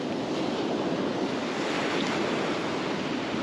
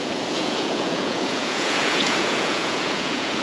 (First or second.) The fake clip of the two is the second